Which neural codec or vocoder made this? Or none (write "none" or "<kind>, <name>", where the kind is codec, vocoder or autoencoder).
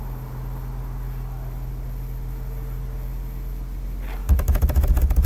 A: none